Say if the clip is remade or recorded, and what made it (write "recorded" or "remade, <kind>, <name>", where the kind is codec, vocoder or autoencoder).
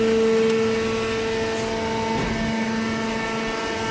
recorded